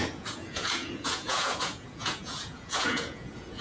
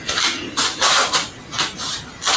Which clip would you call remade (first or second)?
first